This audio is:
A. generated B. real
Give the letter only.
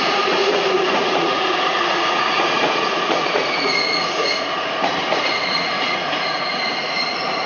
A